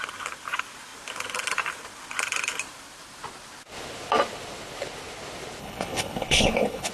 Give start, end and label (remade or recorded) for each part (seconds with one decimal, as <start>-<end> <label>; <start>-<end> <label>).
0.0-5.6 recorded; 5.6-6.9 remade